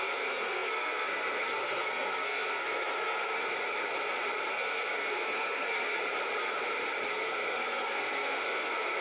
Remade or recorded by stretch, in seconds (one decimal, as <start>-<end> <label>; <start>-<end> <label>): 0.0-3.4 remade; 3.4-4.5 recorded; 4.5-6.0 remade; 6.0-7.1 recorded; 7.1-9.0 remade